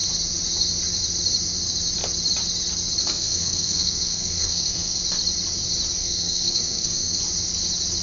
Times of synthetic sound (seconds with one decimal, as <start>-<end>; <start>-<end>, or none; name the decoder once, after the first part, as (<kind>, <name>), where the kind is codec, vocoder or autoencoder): 3.0-5.0 (codec, SNAC); 6.0-7.2

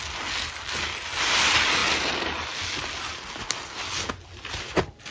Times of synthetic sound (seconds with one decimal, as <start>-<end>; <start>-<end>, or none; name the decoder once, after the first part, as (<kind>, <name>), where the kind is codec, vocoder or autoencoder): none